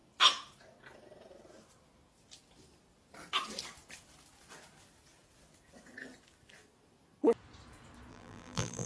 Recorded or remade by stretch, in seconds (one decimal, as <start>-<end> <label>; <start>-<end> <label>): 0.0-8.1 recorded; 8.1-8.9 remade